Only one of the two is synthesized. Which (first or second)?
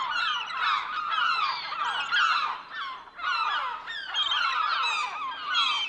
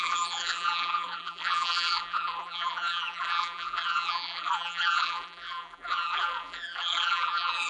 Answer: second